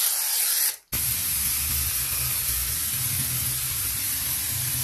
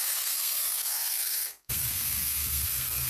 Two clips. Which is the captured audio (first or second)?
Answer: first